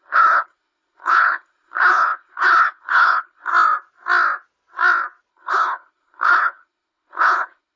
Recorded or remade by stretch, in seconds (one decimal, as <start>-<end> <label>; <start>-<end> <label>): 0.0-3.5 remade; 3.5-5.3 recorded; 5.3-7.8 remade